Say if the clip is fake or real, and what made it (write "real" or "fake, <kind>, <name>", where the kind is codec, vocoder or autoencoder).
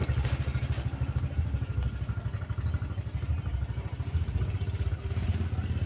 real